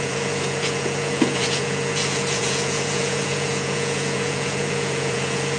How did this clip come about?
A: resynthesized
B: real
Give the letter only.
A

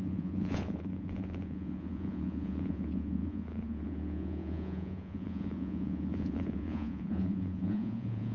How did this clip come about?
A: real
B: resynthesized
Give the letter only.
B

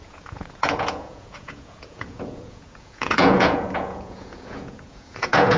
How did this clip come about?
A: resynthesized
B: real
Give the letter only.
A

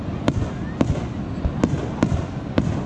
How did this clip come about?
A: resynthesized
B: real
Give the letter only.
B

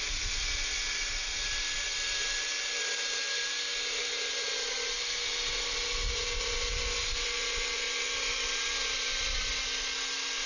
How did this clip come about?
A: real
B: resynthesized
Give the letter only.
A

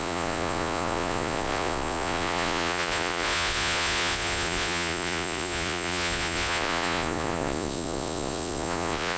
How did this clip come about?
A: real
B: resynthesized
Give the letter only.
B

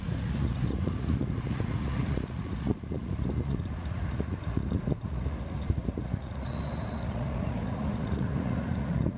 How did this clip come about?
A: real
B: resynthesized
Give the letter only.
B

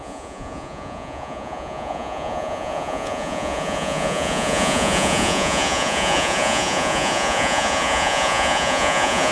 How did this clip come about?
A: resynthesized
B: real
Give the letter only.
A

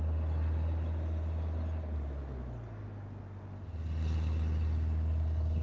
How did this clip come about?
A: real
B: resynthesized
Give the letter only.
A